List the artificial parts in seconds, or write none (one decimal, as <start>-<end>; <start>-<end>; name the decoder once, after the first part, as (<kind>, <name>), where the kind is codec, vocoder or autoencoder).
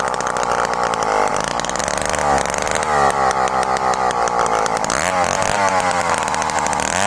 none